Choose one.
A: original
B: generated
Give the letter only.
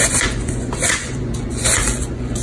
B